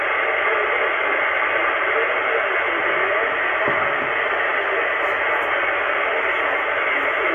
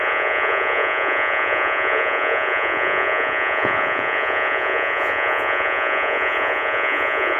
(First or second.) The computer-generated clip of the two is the second